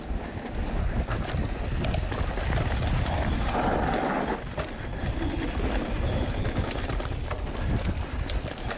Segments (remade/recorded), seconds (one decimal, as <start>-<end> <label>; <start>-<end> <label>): 0.0-8.8 recorded